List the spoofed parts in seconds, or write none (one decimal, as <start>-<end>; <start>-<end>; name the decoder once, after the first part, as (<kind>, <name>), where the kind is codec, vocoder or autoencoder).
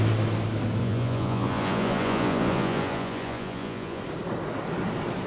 0.8-4.0 (vocoder, Vocos)